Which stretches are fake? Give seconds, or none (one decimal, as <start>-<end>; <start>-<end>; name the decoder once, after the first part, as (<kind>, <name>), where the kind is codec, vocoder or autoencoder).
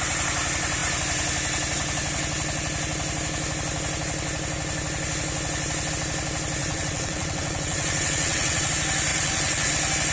6.6-8.7 (vocoder, WaveNeXt); 9.1-9.7